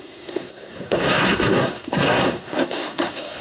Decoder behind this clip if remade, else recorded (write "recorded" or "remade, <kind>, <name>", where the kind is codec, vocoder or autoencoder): remade, codec, SNAC